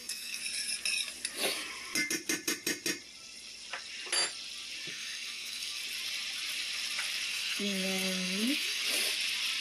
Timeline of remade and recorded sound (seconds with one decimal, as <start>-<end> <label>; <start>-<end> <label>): 0.0-0.4 remade; 0.4-4.9 recorded; 4.9-5.8 remade; 5.8-7.3 recorded; 7.3-8.8 remade; 8.8-9.6 recorded